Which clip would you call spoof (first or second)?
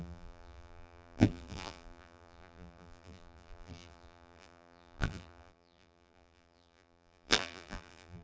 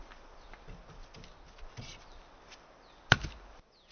first